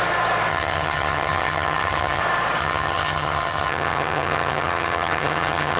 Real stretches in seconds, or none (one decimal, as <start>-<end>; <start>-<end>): 0.0-0.5; 2.2-2.6